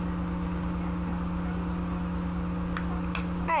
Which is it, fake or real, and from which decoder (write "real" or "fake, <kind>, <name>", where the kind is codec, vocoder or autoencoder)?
real